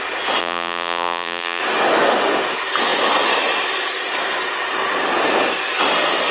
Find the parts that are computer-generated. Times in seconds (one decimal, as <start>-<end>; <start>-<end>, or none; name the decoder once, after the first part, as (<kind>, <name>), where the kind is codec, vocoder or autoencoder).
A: 0.4-1.6 (vocoder, BigVGAN v2)